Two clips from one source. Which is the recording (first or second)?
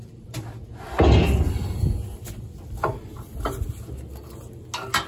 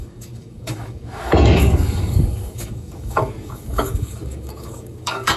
first